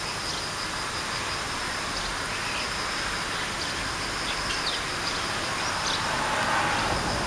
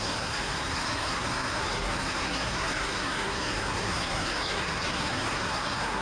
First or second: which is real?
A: first